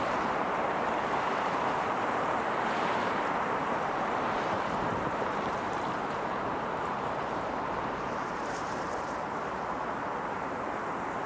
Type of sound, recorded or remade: remade